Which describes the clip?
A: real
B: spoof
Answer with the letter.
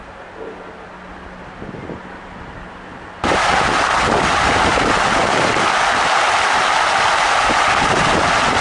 A